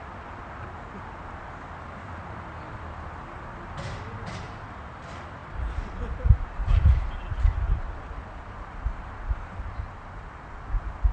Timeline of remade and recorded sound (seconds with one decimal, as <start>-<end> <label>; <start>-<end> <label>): 0.0-5.4 recorded; 5.4-6.4 remade; 6.4-11.1 recorded

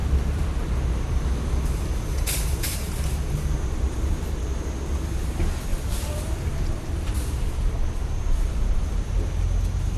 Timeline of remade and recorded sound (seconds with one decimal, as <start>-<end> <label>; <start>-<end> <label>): 0.0-0.6 remade; 0.6-5.7 recorded; 5.7-7.1 remade; 7.1-10.0 recorded

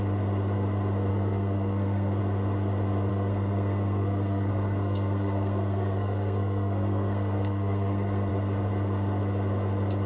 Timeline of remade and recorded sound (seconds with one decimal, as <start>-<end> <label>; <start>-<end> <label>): 0.0-1.1 recorded; 1.1-2.2 remade; 2.2-3.1 recorded; 3.1-8.3 remade; 8.3-10.1 recorded

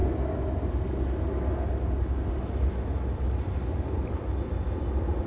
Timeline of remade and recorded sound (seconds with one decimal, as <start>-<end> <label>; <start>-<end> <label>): 0.0-5.3 recorded